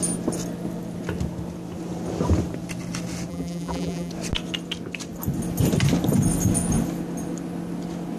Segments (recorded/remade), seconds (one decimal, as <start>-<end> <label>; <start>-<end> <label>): 0.0-3.3 recorded; 3.3-4.1 remade; 4.1-8.2 recorded